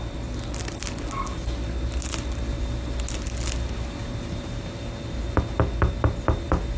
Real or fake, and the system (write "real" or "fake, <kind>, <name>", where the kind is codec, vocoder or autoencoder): real